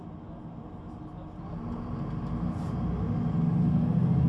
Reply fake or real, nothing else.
real